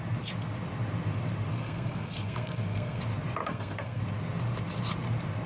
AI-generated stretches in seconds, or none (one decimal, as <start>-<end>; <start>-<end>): 1.5-3.0; 3.4-4.0